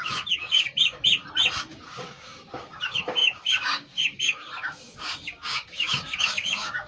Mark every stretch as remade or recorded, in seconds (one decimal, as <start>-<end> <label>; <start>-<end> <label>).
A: 0.0-1.0 remade; 1.0-1.7 recorded; 1.7-6.9 remade